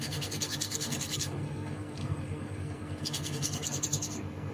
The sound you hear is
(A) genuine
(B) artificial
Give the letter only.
B